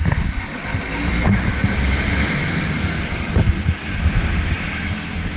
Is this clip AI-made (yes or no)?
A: no